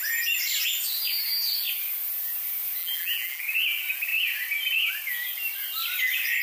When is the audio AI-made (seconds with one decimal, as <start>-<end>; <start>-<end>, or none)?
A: 2.8-3.4